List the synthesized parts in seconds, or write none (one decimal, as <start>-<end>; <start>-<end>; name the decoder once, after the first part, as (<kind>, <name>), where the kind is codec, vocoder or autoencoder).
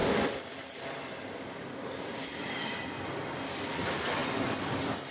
0.0-2.9 (vocoder, BigVGAN v2)